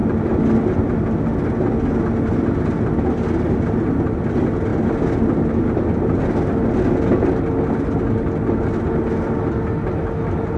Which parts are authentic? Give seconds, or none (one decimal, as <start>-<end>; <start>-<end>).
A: 0.0-10.6